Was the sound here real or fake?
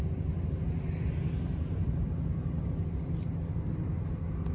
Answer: real